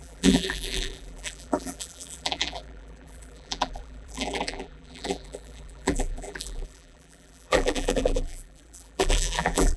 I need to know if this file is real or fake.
fake